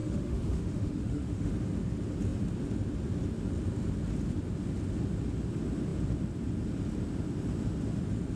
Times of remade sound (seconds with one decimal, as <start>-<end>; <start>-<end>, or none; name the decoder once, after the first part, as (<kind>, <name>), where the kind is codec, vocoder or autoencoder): 0.0-1.5 (autoencoder, DAC-VAE)